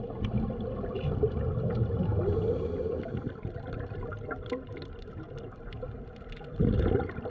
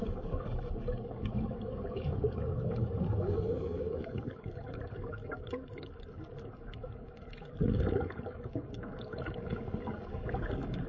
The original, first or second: first